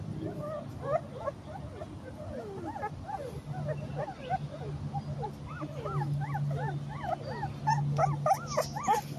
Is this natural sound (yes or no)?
yes